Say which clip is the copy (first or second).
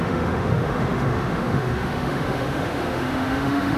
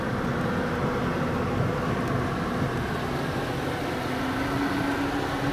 first